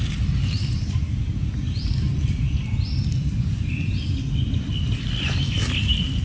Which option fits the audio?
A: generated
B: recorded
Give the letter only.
B